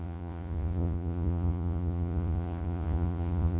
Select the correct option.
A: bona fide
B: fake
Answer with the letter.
B